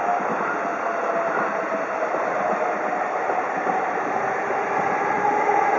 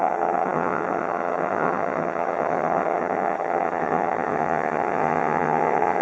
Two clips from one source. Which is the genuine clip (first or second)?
first